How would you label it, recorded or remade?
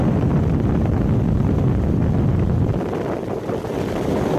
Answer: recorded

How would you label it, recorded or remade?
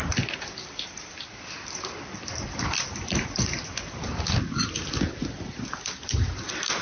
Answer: remade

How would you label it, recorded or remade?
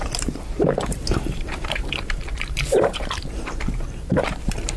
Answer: remade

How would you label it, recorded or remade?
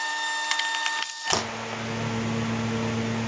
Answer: recorded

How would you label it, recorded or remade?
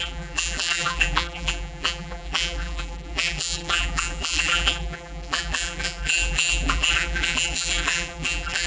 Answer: remade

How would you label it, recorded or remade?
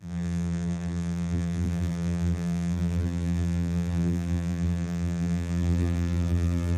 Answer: remade